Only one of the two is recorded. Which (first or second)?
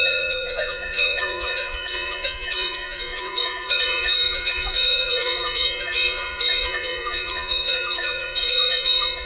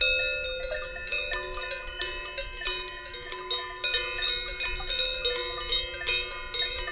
second